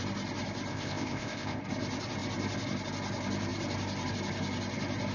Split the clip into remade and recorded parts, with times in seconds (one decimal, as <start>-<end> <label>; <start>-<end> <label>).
0.0-0.7 recorded; 0.7-1.6 remade; 1.6-5.1 recorded